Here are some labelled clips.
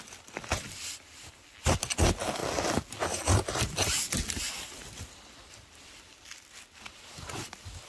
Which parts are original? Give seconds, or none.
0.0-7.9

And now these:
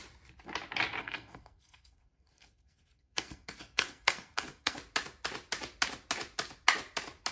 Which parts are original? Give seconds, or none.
0.0-1.0; 4.8-7.3

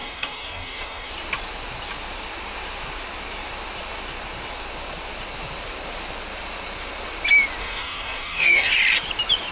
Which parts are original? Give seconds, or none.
1.1-7.6; 8.7-9.5